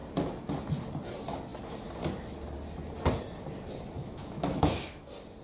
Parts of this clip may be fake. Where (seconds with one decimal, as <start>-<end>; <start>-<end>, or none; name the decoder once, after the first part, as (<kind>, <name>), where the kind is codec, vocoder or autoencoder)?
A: 4.0-5.0 (autoencoder, DAC-VAE)